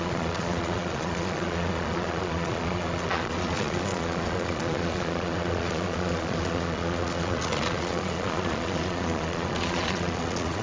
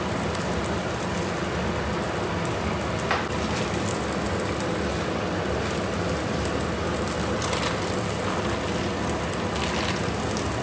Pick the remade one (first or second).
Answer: first